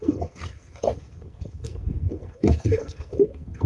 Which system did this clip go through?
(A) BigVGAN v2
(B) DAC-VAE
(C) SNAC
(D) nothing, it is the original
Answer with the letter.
C